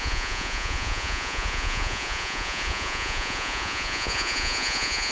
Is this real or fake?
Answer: fake